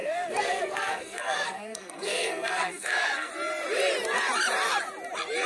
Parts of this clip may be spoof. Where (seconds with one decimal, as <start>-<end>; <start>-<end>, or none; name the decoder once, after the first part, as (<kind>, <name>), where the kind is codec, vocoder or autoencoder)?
0.0-3.3 (codec, SNAC)